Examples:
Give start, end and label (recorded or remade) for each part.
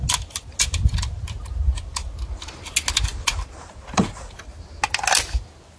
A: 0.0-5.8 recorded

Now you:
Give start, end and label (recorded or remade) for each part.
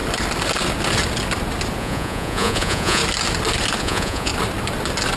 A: 0.0-1.8 recorded; 1.8-3.0 remade; 3.0-3.8 recorded; 3.8-4.3 remade; 4.3-5.2 recorded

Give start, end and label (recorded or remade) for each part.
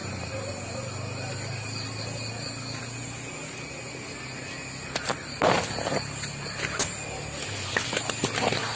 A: 0.0-8.8 recorded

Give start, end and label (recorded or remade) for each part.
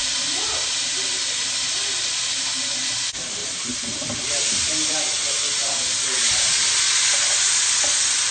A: 0.0-1.2 remade; 1.2-3.4 recorded; 3.4-5.0 remade; 5.0-5.6 recorded; 5.6-6.7 remade; 6.7-8.3 recorded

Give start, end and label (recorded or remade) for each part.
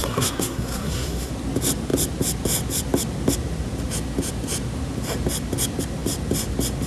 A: 0.0-1.3 remade; 1.3-6.9 recorded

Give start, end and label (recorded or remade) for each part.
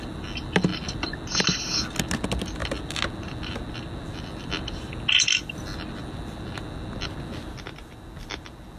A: 0.0-8.8 recorded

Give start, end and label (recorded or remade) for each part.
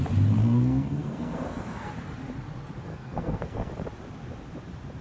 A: 0.0-0.4 recorded; 0.4-1.9 remade; 1.9-2.9 recorded; 2.9-3.7 remade; 3.7-5.0 recorded